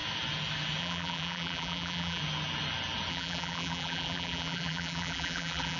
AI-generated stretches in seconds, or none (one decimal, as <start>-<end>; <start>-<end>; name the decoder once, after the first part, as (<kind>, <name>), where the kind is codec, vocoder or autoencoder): 0.8-2.2 (vocoder, BigVGAN v2); 3.1-5.8